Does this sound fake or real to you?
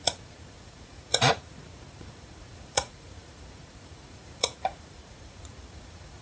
fake